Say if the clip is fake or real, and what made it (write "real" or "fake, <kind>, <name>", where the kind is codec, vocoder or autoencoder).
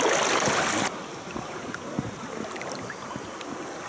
real